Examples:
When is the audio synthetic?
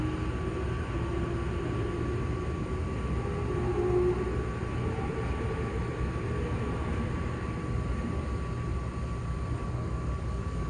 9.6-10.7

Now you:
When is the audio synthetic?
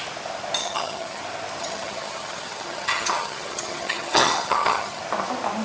0.6-1.2; 1.6-5.0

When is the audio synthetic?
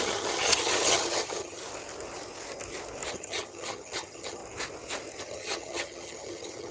0.0-1.6; 3.1-4.4; 5.2-6.7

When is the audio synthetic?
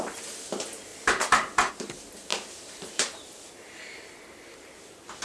0.9-1.7; 2.3-4.1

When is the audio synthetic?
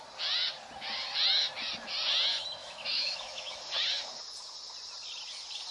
2.6-3.6